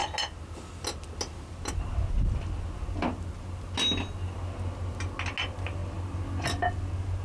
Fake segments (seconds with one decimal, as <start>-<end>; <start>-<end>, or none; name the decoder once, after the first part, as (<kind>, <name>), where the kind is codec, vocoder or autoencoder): none